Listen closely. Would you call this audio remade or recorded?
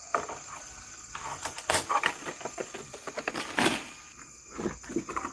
recorded